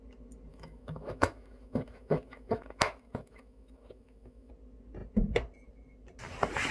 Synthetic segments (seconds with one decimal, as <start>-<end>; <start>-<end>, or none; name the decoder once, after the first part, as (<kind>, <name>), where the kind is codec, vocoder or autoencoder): 0.5-4.5 (autoencoder, DAC-VAE)